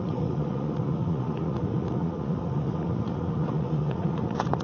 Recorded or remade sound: remade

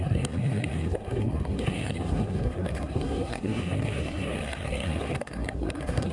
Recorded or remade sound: remade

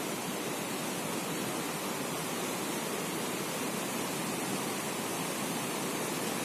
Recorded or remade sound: recorded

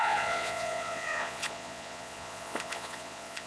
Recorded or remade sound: remade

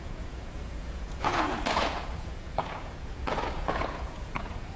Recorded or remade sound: remade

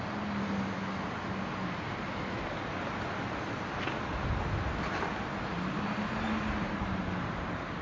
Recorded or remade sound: recorded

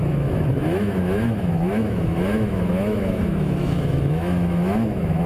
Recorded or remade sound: remade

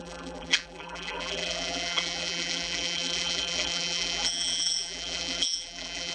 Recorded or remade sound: remade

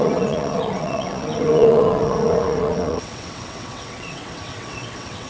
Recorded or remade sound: remade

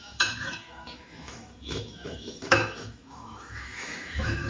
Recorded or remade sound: remade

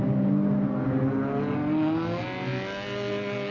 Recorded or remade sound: recorded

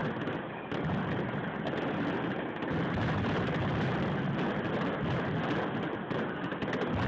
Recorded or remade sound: recorded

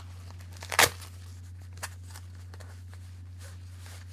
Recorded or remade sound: recorded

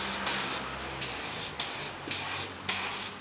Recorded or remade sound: recorded